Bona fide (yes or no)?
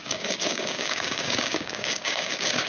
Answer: no